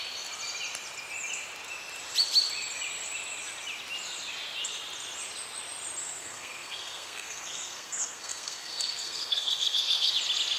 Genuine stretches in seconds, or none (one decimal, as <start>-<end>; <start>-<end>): 0.0-6.0; 10.1-10.6